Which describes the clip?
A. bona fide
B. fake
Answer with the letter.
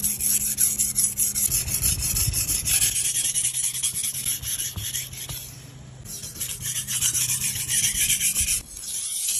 A